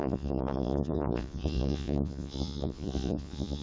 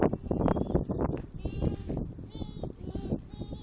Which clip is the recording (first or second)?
second